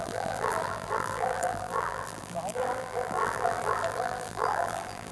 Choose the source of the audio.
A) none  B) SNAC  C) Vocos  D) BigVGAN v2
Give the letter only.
D